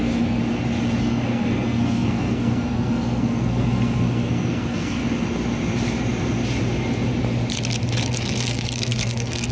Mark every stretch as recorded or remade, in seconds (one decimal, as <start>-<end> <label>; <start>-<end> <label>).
0.0-0.4 remade; 0.4-1.0 recorded; 1.0-5.0 remade; 5.0-8.1 recorded; 8.1-9.5 remade

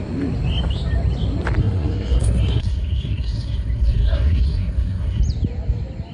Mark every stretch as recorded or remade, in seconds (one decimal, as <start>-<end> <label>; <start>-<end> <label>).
0.0-1.6 recorded; 1.6-5.2 remade; 5.2-6.1 recorded

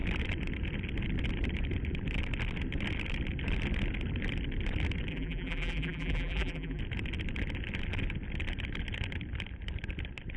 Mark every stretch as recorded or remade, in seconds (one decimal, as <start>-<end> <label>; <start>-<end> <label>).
0.0-5.1 recorded; 5.1-6.8 remade; 6.8-10.4 recorded

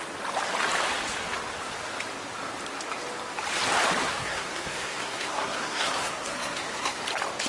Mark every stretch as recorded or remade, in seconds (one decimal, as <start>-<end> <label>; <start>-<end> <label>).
0.0-4.0 recorded; 4.0-7.0 remade; 7.0-7.5 recorded

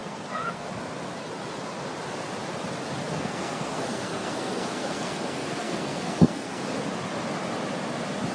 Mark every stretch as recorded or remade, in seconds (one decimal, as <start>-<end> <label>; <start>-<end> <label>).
0.0-0.7 remade; 0.7-3.1 recorded; 3.1-6.6 remade; 6.6-8.3 recorded